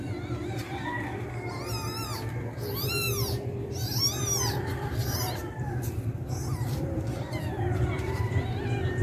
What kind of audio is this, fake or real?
fake